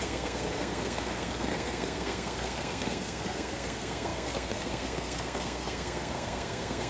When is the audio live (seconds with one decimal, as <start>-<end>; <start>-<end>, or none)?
none